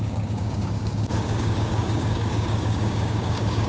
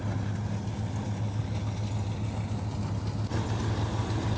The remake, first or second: first